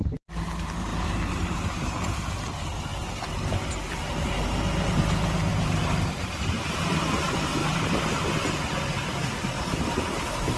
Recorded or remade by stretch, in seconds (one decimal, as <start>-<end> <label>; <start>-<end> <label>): 0.0-0.9 recorded; 0.9-2.1 remade; 2.1-5.5 recorded; 5.5-6.9 remade; 6.9-7.6 recorded; 7.6-8.3 remade; 8.3-10.6 recorded